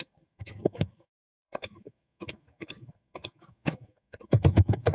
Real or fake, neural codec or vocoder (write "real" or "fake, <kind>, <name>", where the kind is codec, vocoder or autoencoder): fake, codec, SNAC